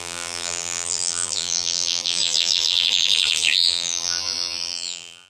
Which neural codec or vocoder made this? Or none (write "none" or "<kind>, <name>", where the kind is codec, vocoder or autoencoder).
vocoder, BigVGAN v2